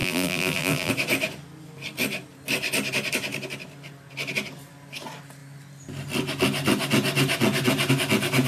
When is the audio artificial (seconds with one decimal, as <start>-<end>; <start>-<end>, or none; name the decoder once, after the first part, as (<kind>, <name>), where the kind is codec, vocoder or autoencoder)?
0.0-0.9 (vocoder, BigVGAN v2)